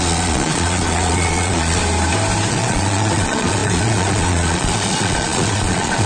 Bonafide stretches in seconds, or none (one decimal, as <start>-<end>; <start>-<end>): 1.8-2.5